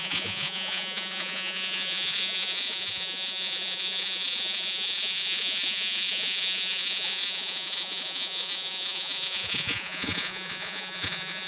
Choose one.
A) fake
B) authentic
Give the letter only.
A